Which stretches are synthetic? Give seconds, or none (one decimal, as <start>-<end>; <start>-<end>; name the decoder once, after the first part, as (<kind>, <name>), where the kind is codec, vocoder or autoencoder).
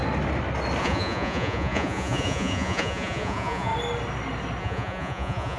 0.8-3.7 (vocoder, Vocos); 4.6-5.6